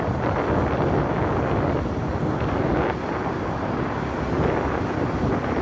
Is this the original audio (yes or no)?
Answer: yes